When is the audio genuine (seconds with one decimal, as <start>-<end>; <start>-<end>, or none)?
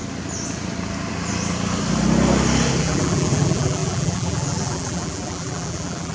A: 0.0-2.8